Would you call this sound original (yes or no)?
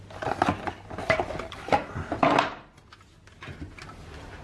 yes